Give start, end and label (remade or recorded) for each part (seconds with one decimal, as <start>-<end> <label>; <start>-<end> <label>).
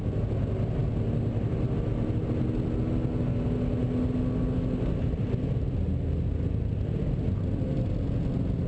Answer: 0.0-8.7 recorded